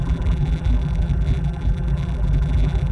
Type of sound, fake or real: fake